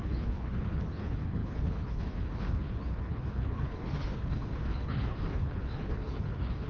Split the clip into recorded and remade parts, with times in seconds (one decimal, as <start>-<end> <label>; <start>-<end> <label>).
0.0-6.7 remade